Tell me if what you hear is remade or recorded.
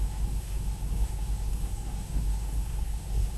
remade